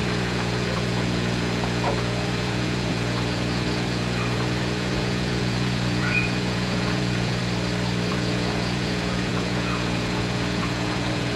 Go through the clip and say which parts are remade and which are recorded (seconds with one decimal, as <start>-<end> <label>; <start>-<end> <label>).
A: 0.0-7.4 remade; 7.4-8.1 recorded; 8.1-11.4 remade